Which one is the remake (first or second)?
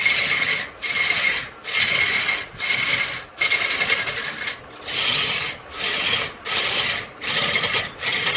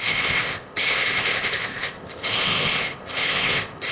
second